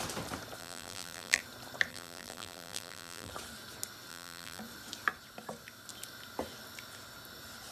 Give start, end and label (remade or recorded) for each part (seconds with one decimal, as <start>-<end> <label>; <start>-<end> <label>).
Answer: 0.0-0.6 recorded; 0.6-1.4 remade; 1.4-1.9 recorded; 1.9-3.3 remade; 3.3-4.1 recorded; 4.1-4.6 remade; 4.6-7.7 recorded